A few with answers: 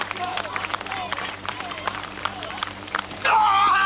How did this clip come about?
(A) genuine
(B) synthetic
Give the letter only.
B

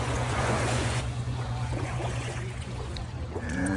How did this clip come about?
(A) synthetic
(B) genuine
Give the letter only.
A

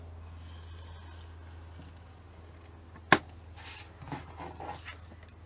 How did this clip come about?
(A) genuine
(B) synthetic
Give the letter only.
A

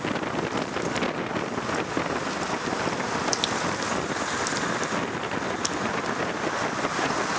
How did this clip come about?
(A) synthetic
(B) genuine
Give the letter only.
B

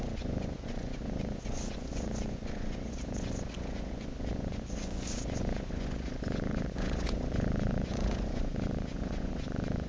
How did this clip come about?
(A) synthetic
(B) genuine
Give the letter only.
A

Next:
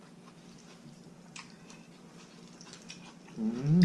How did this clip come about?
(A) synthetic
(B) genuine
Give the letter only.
B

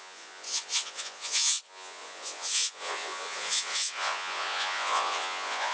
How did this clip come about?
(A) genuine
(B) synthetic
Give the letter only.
B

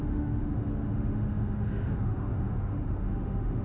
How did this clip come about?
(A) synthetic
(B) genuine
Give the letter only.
A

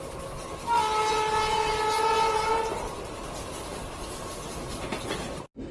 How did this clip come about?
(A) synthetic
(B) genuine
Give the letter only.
B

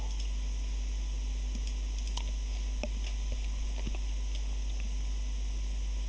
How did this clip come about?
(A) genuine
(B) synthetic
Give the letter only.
A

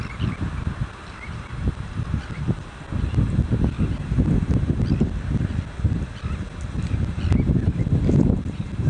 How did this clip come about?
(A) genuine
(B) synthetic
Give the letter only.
A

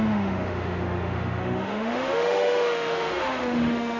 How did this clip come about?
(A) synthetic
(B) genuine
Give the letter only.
A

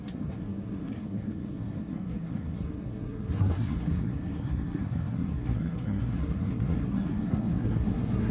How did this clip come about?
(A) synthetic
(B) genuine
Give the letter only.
A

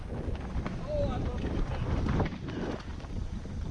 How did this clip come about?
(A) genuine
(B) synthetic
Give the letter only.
A